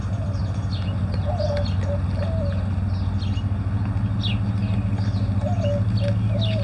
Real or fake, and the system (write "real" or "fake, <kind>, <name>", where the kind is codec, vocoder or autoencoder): real